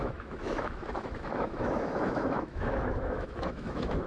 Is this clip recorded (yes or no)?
no